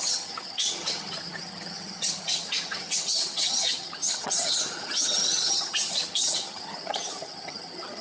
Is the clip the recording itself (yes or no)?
no